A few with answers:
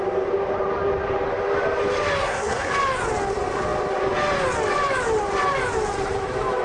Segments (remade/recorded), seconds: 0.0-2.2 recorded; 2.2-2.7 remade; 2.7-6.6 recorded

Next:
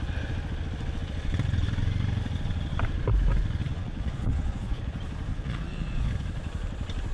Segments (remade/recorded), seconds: 0.0-3.7 recorded; 3.7-4.8 remade; 4.8-5.3 recorded; 5.3-6.1 remade; 6.1-7.1 recorded